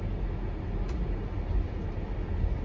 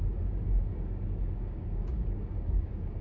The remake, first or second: second